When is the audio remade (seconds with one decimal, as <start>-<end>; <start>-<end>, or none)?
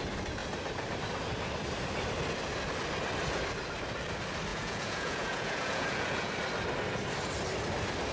4.5-6.3